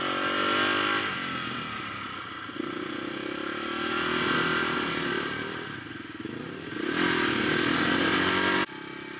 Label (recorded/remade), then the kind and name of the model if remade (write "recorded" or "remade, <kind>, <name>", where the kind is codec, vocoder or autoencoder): recorded